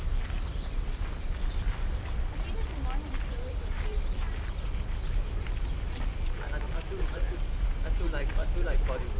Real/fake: fake